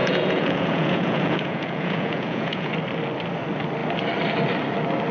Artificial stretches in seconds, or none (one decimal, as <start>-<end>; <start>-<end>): 0.0-2.7